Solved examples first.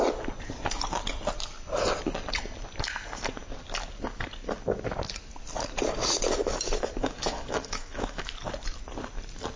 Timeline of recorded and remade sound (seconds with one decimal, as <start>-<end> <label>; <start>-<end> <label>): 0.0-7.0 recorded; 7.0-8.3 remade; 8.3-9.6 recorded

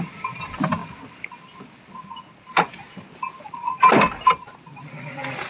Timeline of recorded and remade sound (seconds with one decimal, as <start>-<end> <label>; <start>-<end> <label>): 0.0-5.5 recorded

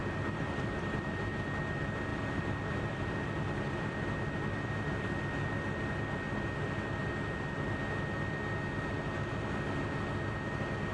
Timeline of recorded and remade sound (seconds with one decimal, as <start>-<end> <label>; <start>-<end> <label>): 0.0-1.6 remade; 1.6-2.1 recorded; 2.1-5.2 remade; 5.2-10.9 recorded

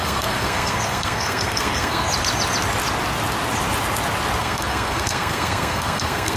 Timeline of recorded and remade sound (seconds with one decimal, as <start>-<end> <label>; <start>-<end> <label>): 0.0-2.1 remade; 2.1-4.4 recorded; 4.4-6.4 remade

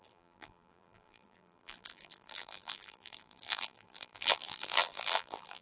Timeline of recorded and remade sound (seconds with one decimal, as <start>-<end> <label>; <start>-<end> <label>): 0.0-5.6 remade

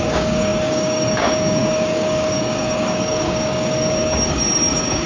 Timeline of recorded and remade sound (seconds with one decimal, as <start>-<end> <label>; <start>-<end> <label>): 0.0-5.1 remade

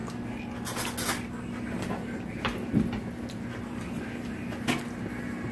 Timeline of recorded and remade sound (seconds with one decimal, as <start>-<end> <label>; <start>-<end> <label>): 0.0-5.5 recorded

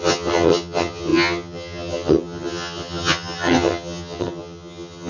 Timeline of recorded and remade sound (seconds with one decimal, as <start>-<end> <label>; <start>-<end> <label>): 0.0-5.1 remade